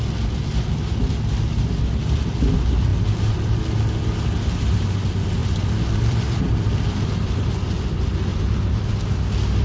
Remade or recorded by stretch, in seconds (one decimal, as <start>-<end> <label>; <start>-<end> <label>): 0.0-2.9 recorded; 2.9-3.6 remade; 3.6-5.4 recorded; 5.4-7.5 remade; 7.5-8.3 recorded; 8.3-8.9 remade; 8.9-9.6 recorded